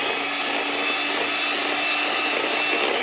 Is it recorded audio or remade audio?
recorded